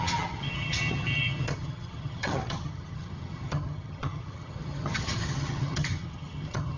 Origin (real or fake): fake